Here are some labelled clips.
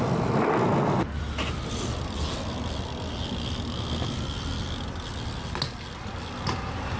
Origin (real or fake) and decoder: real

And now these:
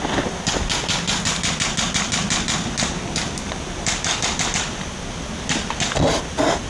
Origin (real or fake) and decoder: real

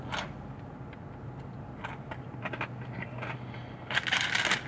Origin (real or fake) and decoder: real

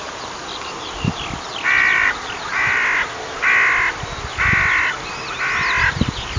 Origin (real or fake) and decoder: real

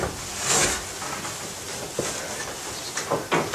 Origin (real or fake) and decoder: real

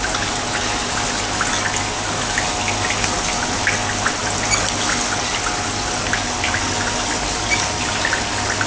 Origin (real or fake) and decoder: real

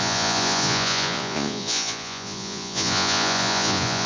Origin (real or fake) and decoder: fake, vocoder, Vocos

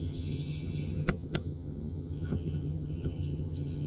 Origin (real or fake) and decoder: fake, vocoder, HiFi-GAN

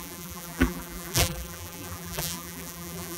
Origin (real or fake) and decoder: fake, vocoder, BigVGAN v2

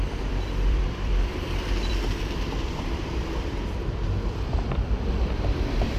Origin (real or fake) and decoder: fake, vocoder, BigVGAN v2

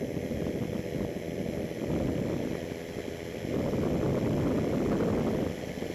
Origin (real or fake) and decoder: real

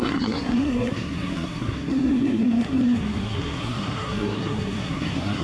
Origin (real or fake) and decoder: fake, codec, SNAC